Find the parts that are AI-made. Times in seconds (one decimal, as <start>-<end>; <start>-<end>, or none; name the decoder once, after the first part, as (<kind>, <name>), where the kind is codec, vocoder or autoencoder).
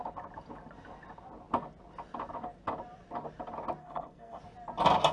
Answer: 3.8-4.4 (codec, SNAC)